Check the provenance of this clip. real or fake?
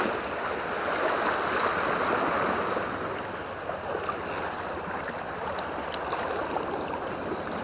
real